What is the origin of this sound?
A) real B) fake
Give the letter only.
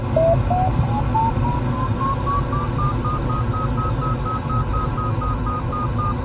A